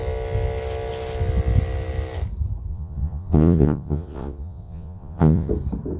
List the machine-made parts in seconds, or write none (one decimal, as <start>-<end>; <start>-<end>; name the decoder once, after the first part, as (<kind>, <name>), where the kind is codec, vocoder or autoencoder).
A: 2.7-5.5 (vocoder, Vocos)